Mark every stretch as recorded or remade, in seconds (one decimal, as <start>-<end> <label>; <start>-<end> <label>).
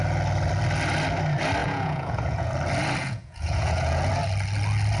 0.0-1.6 recorded; 1.6-2.5 remade; 2.5-3.0 recorded; 3.0-4.1 remade; 4.1-5.0 recorded